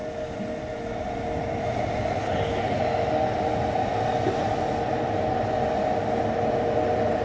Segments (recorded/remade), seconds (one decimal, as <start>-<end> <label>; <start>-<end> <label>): 0.0-2.2 recorded; 2.2-2.8 remade; 2.8-7.2 recorded